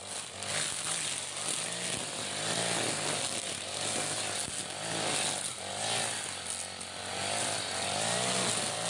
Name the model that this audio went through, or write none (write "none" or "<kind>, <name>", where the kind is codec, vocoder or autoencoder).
none